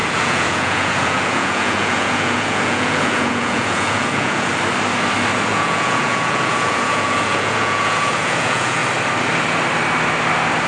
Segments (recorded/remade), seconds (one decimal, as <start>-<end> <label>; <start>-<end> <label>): 0.0-4.5 remade; 4.5-5.5 recorded; 5.5-8.8 remade; 8.8-10.7 recorded